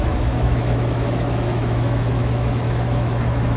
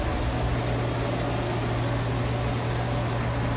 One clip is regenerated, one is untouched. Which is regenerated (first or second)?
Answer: first